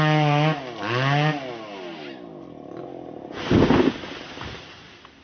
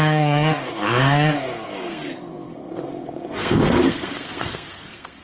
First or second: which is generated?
second